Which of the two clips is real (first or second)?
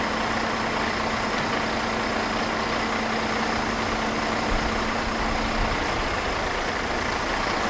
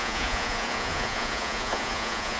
first